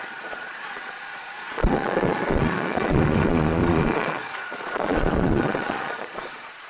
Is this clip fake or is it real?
fake